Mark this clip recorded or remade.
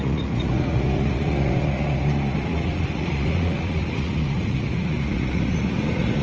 remade